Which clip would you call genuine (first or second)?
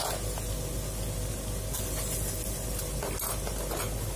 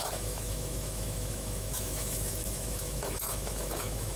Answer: first